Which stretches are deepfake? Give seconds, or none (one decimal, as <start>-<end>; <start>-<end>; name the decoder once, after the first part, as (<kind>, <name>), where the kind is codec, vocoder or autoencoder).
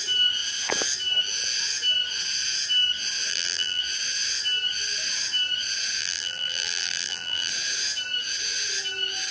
3.3-3.8 (vocoder, BigVGAN v2); 6.0-7.5